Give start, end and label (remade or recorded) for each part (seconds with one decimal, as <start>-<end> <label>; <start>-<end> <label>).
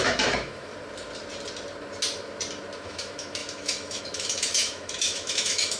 0.0-0.7 remade; 0.7-2.8 recorded; 2.8-5.8 remade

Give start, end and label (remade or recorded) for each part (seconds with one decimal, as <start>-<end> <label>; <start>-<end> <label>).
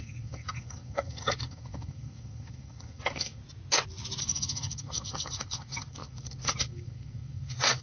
0.0-3.4 remade; 3.4-4.2 recorded; 4.2-7.8 remade